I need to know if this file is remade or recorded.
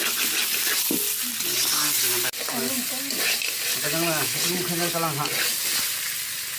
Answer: recorded